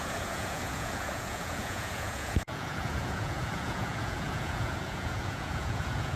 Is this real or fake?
fake